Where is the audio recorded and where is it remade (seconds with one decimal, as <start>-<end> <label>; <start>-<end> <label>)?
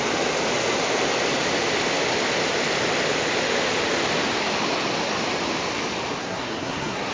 0.0-6.2 recorded; 6.2-7.1 remade